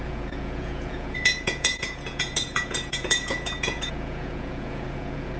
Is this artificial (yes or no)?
yes